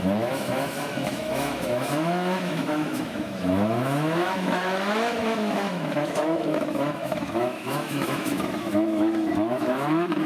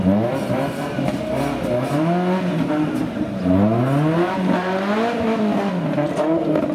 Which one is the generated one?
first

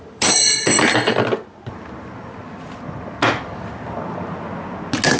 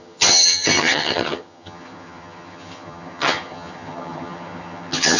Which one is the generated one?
second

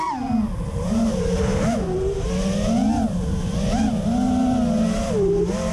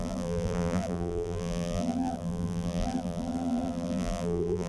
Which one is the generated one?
second